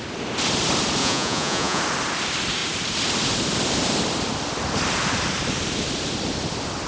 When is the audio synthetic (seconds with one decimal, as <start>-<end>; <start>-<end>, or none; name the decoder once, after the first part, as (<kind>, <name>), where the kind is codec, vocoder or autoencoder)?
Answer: 1.0-1.8 (vocoder, Vocos)